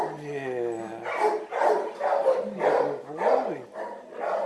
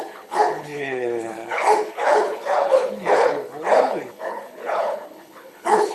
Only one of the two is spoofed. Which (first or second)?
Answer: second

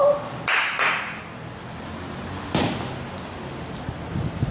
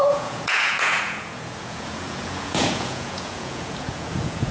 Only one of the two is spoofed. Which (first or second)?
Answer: second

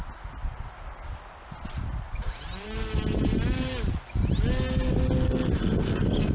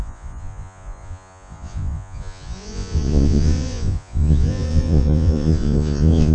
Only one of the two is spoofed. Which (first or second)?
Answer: second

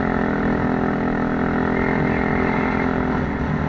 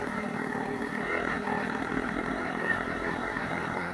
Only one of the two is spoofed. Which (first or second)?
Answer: second